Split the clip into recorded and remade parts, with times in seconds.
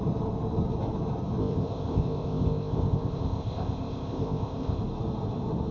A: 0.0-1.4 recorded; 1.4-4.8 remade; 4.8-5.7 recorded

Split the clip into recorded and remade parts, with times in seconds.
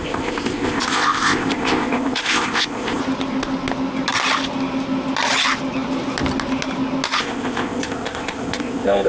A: 0.0-3.0 remade; 3.0-7.2 recorded; 7.2-9.1 remade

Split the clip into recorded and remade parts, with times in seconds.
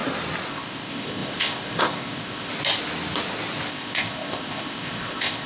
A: 0.0-0.5 recorded; 0.5-2.5 remade; 2.5-3.7 recorded; 3.7-5.5 remade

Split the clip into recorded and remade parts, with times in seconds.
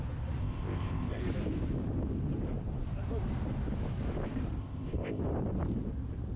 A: 0.0-0.4 recorded; 0.4-1.2 remade; 1.2-4.6 recorded; 4.6-5.2 remade; 5.2-6.4 recorded